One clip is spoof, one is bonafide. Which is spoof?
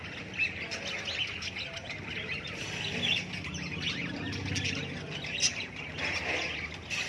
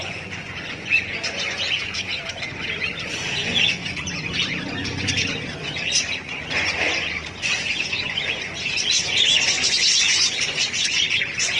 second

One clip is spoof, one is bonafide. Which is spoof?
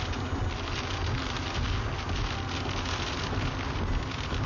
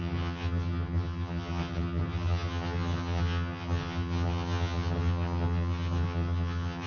second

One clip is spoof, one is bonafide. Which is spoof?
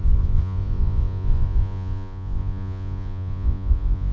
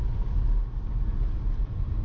first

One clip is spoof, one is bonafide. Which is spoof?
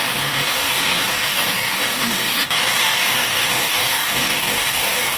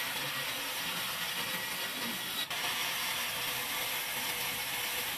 first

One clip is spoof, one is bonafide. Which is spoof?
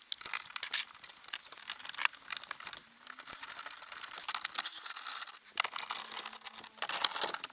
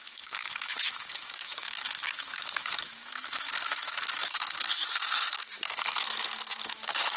second